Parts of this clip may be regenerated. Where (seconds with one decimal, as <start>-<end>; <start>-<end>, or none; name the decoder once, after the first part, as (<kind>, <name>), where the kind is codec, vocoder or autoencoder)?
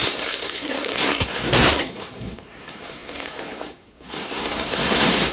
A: 0.0-5.3 (codec, SNAC)